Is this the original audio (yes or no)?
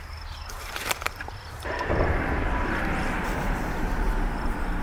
no